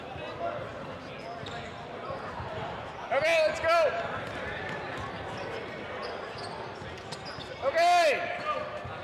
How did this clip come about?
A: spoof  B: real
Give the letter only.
B